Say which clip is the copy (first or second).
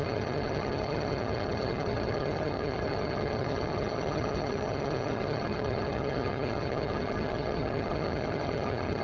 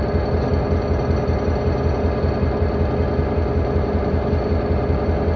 first